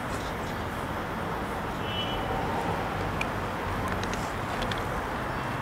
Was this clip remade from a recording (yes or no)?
no